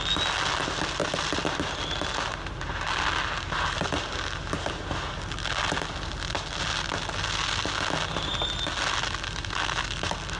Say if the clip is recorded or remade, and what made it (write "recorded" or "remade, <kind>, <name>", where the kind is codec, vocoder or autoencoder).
recorded